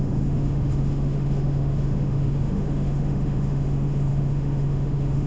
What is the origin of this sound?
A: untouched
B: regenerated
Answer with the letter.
B